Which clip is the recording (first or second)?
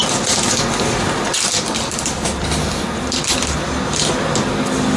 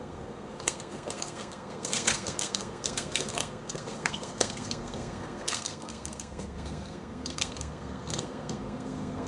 first